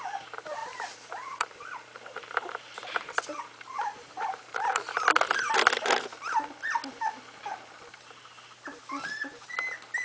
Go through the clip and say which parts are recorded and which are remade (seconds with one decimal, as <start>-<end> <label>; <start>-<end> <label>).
0.0-0.6 recorded; 0.6-4.8 remade; 4.8-10.0 recorded